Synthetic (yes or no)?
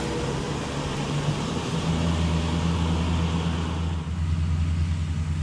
no